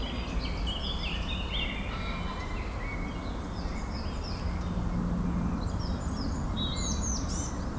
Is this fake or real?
real